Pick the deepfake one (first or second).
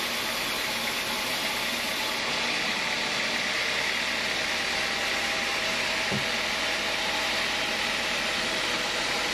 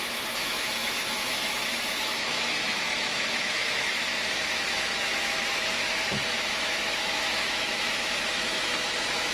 second